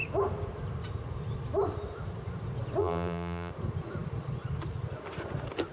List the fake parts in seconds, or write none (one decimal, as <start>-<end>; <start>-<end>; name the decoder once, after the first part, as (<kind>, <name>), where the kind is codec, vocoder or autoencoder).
2.8-3.5 (vocoder, BigVGAN v2)